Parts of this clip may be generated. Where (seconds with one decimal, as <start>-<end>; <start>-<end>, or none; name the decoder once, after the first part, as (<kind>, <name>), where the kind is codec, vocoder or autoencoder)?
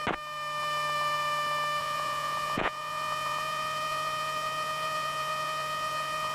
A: 1.8-6.3 (vocoder, Vocos)